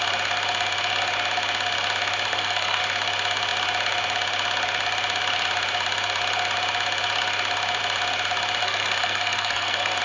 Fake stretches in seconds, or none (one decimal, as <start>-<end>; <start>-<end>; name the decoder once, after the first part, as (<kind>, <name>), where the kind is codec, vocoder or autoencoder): 2.3-2.8 (codec, SNAC); 8.6-10.0